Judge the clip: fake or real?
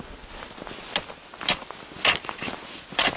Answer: real